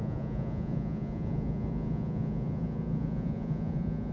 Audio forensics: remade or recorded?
remade